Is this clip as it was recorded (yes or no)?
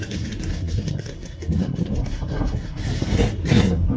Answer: no